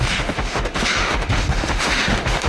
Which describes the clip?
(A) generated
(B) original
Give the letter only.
A